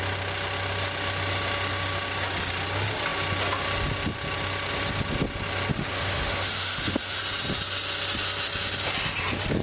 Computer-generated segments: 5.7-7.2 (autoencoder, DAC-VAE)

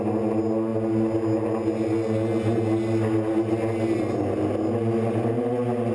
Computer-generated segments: none

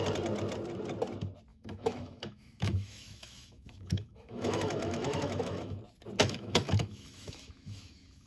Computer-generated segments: 1.5-5.8 (autoencoder, DAC-VAE); 6.2-8.3

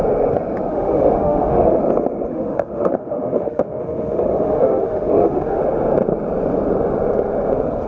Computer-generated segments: 0.7-1.8 (autoencoder, DAC-VAE); 2.3-5.6

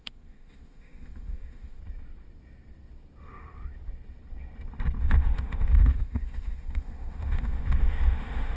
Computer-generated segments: 0.0-1.8 (autoencoder, DAC-VAE); 5.0-8.6